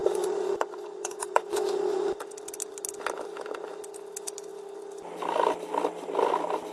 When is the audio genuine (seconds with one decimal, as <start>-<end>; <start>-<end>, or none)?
2.2-6.7